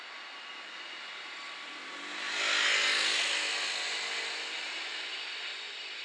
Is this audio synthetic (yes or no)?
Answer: no